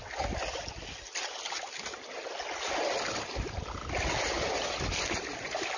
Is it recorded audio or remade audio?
recorded